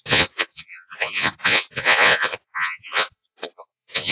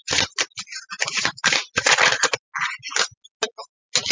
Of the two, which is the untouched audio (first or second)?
second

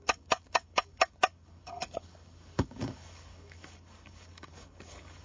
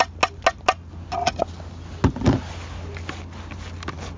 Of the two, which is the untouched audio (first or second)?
second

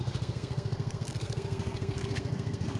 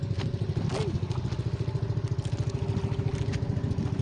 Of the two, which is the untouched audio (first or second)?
second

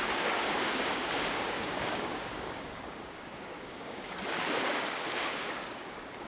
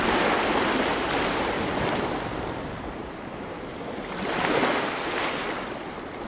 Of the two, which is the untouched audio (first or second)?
second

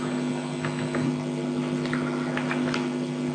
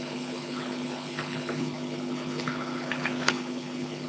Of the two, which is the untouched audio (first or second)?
first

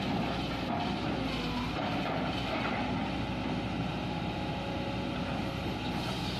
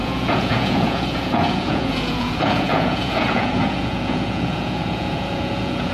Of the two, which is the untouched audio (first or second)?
first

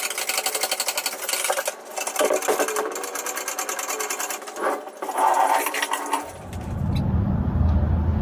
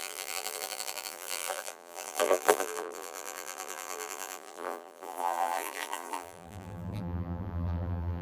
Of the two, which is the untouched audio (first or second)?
first